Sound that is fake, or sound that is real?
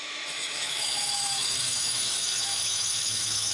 fake